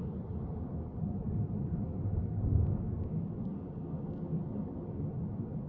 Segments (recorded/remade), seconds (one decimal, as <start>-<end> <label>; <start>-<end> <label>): 0.0-5.7 recorded